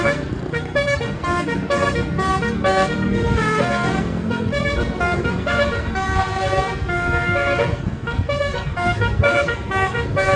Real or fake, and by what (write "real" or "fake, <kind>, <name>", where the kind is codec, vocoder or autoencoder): fake, codec, SNAC